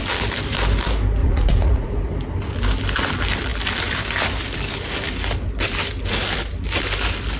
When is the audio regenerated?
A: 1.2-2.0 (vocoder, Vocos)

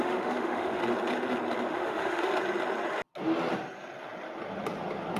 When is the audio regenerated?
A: 0.0-0.8 (autoencoder, DAC-VAE); 1.7-2.3

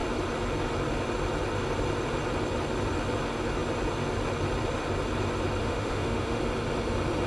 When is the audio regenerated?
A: 5.6-6.4 (autoencoder, DAC-VAE)

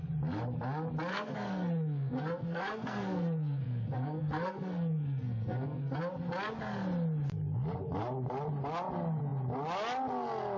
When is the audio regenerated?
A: 1.1-6.0 (codec, SNAC)

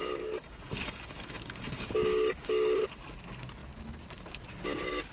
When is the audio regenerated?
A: 0.0-2.9 (codec, DAC)